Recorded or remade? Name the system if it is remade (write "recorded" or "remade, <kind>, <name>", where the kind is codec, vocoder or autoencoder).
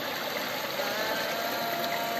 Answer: recorded